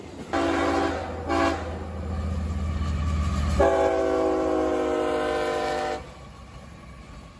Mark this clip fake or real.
real